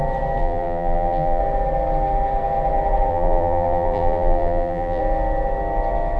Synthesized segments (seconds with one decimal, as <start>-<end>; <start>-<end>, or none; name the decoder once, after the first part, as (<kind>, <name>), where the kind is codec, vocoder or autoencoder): 0.4-1.4 (vocoder, BigVGAN v2); 3.1-5.0